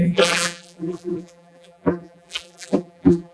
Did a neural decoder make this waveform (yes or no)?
yes